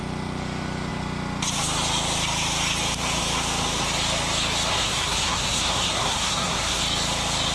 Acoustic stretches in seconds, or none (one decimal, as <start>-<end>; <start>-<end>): 0.0-4.7; 6.8-7.5